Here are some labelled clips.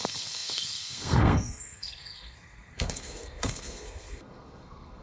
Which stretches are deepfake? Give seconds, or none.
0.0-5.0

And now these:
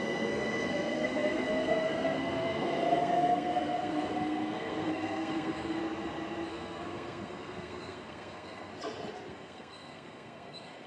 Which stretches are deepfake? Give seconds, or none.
0.0-5.8; 6.5-8.7; 9.3-10.9

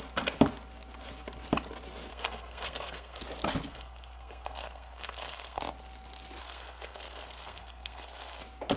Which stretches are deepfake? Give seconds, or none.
2.1-3.2; 3.7-5.6; 6.4-8.4